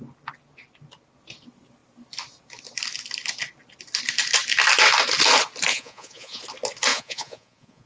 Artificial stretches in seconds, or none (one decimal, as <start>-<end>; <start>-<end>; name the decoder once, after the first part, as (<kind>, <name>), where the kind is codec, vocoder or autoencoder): 5.7-6.4 (vocoder, Vocos); 6.9-7.9